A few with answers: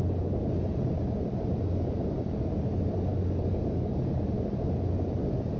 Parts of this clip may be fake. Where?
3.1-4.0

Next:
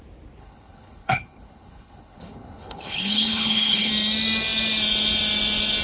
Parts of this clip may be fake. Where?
0.4-3.9

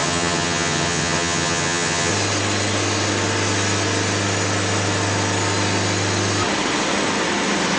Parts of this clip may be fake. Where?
0.0-2.1

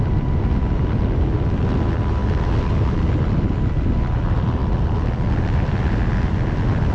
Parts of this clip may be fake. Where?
none

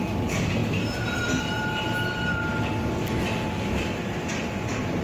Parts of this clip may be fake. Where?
none

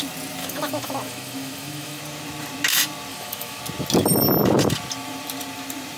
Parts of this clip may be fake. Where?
0.4-2.0; 3.1-3.6

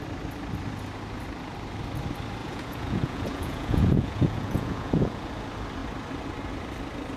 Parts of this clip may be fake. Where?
2.4-5.3